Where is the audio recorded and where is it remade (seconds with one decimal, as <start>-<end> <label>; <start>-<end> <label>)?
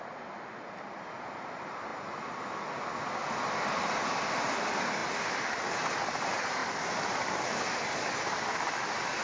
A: 0.0-9.2 recorded